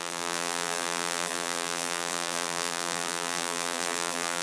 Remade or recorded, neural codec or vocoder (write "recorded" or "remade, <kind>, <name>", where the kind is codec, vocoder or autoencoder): remade, vocoder, BigVGAN v2